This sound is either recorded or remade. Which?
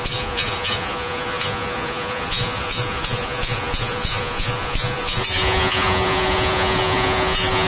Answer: remade